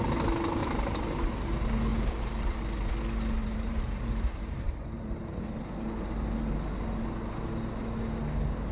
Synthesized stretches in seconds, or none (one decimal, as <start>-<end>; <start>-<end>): 0.6-1.3; 1.9-2.6; 3.4-6.1